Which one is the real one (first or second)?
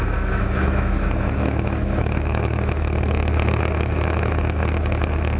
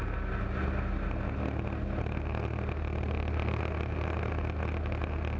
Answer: second